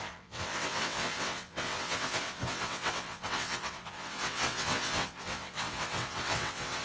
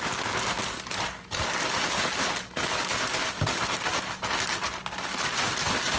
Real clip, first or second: second